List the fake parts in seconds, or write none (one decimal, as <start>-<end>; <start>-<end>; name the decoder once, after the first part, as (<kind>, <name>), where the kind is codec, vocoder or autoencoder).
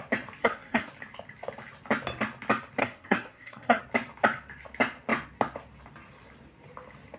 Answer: 0.4-0.9 (codec, SNAC); 2.8-3.8